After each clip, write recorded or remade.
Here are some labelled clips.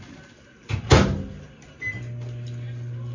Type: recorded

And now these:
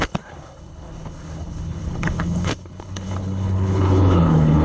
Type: remade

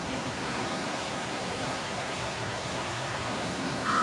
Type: remade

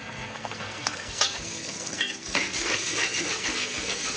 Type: remade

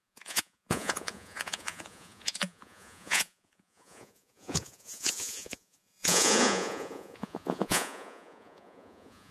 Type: remade